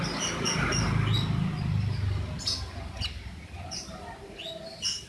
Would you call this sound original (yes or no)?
yes